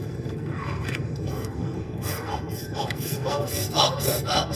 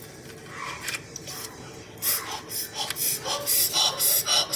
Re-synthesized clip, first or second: first